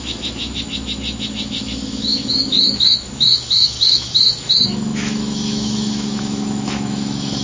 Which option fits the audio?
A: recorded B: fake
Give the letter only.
B